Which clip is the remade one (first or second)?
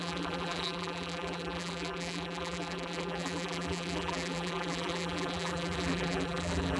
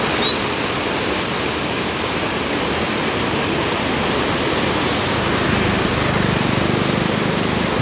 first